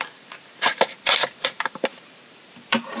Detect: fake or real fake